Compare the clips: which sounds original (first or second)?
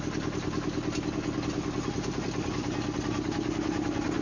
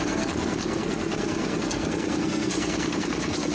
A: first